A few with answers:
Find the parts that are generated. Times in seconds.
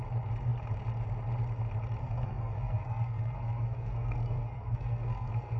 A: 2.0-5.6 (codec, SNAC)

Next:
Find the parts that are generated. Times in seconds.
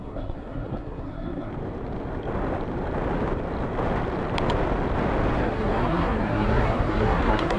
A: 0.0-1.5 (codec, SNAC); 5.4-7.6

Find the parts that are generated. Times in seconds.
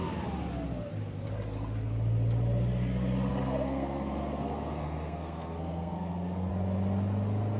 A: 3.3-6.5 (codec, SNAC)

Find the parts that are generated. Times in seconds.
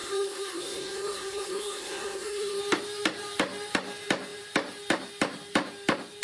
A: 0.0-2.6 (codec, SNAC)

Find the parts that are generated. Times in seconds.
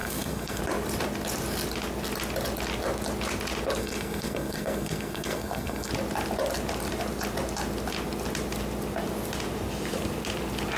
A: 0.0-0.6 (codec, SNAC); 3.8-5.9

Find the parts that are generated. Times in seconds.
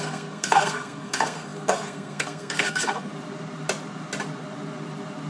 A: 0.0-3.1 (codec, SNAC)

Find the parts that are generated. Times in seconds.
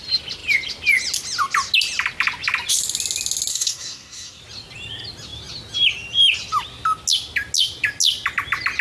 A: 3.5-4.4 (codec, SNAC)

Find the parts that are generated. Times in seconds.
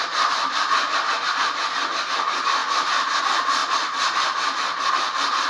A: none